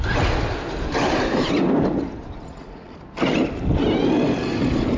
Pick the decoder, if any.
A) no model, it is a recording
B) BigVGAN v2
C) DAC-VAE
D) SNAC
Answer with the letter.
A